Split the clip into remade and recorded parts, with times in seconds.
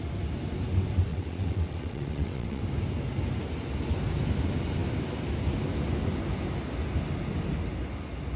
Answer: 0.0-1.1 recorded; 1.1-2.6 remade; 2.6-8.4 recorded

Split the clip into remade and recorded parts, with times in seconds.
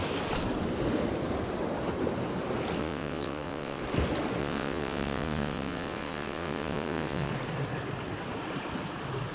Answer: 0.0-2.8 recorded; 2.8-3.8 remade; 3.8-4.4 recorded; 4.4-7.3 remade; 7.3-9.3 recorded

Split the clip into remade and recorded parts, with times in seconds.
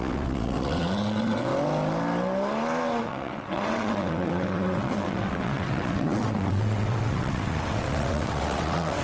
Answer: 0.0-1.5 remade; 1.5-3.0 recorded; 3.0-9.0 remade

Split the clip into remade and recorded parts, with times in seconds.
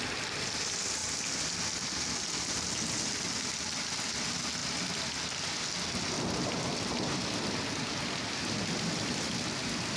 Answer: 0.0-10.0 recorded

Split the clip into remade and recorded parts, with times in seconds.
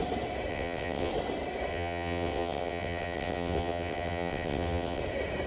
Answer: 0.0-0.5 recorded; 0.5-1.1 remade; 1.1-1.7 recorded; 1.7-5.0 remade; 5.0-5.5 recorded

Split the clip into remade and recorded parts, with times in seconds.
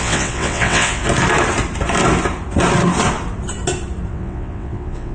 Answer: 0.0-1.0 remade; 1.0-4.1 recorded; 4.1-5.1 remade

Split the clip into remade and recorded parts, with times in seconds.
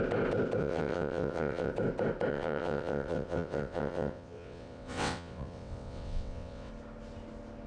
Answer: 0.0-0.6 recorded; 0.6-1.7 remade; 1.7-2.3 recorded; 2.3-6.7 remade; 6.7-7.7 recorded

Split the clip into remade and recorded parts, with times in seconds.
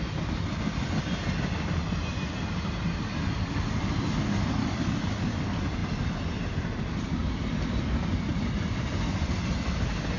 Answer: 0.0-10.2 recorded